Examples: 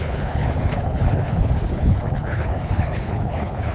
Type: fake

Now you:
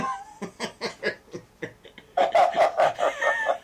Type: real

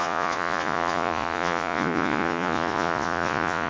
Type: fake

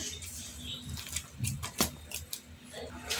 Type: real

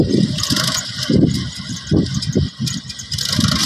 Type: real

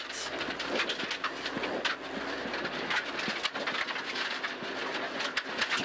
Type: real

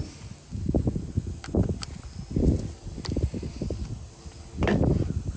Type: real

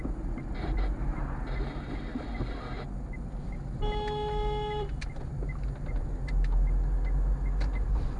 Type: real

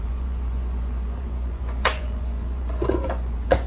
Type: fake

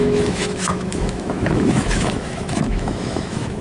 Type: fake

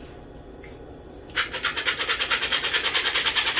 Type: real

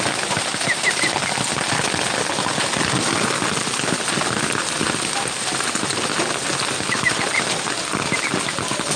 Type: real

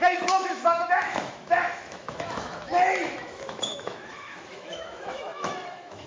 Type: fake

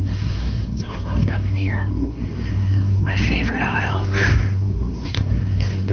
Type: fake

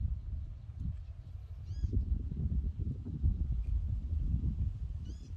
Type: real